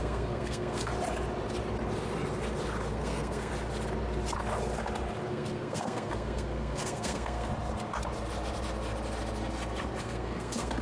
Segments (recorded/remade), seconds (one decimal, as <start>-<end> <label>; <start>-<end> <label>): 0.0-0.9 remade; 0.9-2.9 recorded; 2.9-3.5 remade; 3.5-5.3 recorded; 5.3-7.5 remade; 7.5-10.0 recorded; 10.0-10.8 remade